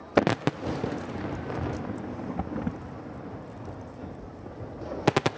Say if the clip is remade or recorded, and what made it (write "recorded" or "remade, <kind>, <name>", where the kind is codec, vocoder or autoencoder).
recorded